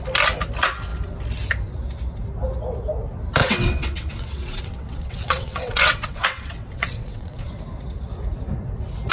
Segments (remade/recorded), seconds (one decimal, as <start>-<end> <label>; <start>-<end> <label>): 0.0-3.4 recorded; 3.4-7.5 remade; 7.5-9.1 recorded